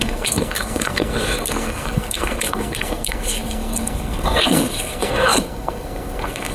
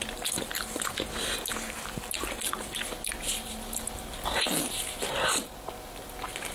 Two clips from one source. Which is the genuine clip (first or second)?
second